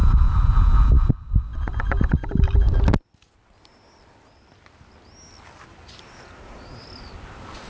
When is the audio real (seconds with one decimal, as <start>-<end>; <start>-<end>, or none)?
0.0-7.7